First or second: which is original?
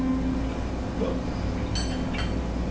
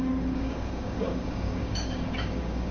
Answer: first